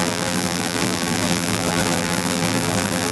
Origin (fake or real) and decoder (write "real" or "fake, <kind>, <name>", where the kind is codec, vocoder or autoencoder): fake, vocoder, BigVGAN v2